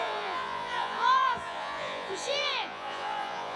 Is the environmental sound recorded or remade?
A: remade